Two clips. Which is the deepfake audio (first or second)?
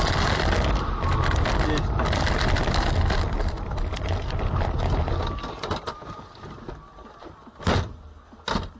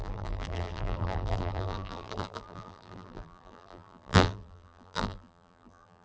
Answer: second